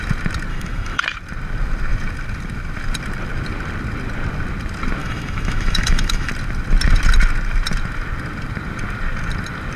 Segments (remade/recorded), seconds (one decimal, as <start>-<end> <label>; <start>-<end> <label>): 0.0-0.5 recorded; 0.5-1.0 remade; 1.0-5.0 recorded; 5.0-6.3 remade; 6.3-9.8 recorded